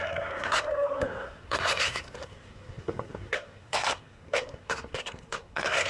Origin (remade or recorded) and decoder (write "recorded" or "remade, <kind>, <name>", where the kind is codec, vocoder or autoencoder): remade, codec, SNAC